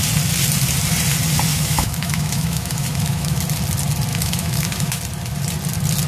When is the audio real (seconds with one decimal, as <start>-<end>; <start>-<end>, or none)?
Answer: 0.0-1.5; 3.4-4.1; 5.0-6.1